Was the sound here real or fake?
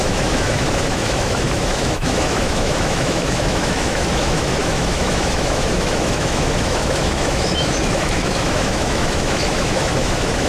fake